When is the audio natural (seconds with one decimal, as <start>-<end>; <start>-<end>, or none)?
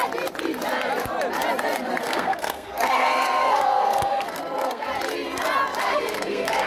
0.0-2.0; 4.9-5.8